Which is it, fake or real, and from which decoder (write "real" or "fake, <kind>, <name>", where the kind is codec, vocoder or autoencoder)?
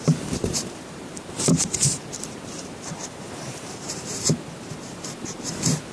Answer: fake, vocoder, BigVGAN v2